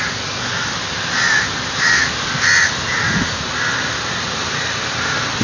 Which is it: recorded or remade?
recorded